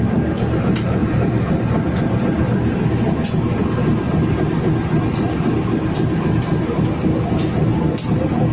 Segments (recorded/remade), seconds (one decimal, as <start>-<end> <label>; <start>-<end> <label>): 0.0-8.5 recorded